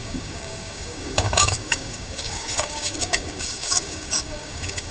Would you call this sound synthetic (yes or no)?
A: yes